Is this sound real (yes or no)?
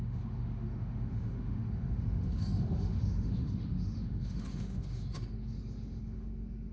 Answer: no